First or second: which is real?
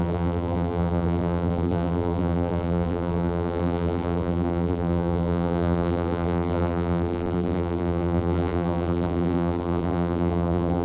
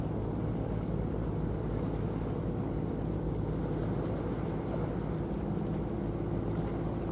second